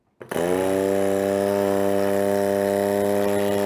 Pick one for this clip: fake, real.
real